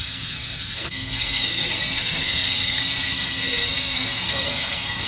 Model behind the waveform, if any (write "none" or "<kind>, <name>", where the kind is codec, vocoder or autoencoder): codec, SNAC